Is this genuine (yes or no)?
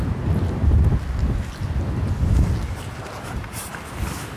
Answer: yes